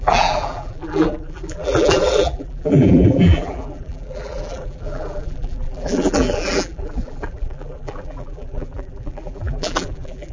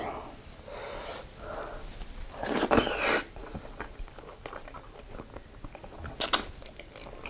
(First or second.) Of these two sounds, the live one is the second